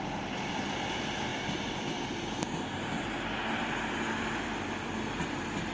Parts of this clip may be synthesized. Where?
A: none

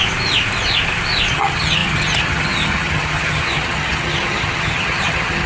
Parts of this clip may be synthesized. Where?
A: 1.3-5.5 (vocoder, HiFi-GAN)